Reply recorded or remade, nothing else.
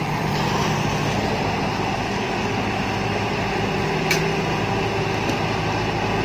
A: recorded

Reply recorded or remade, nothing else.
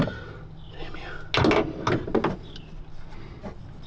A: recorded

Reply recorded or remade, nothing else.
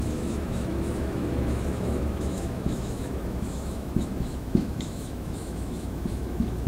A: remade